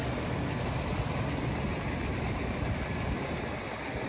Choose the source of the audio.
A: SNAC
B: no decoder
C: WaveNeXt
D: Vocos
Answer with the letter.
B